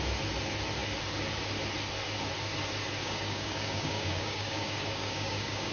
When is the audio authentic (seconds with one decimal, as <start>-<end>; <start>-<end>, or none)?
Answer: 0.0-3.0